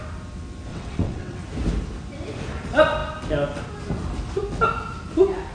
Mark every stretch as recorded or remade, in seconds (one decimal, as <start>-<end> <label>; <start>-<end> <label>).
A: 0.0-0.7 recorded; 0.7-1.4 remade; 1.4-5.5 recorded

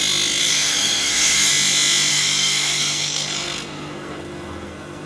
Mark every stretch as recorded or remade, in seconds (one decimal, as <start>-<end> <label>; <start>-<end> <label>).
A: 0.0-0.4 recorded; 0.4-1.5 remade; 1.5-2.1 recorded; 2.1-5.1 remade

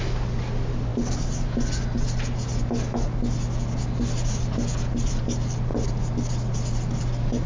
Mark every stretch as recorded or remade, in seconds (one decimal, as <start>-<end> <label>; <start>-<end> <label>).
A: 0.0-7.5 recorded